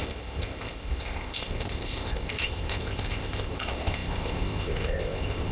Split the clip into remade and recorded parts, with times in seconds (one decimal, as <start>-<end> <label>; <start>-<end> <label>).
0.0-5.5 remade